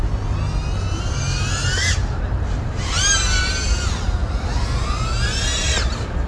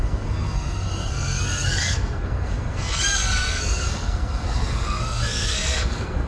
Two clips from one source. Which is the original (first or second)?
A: first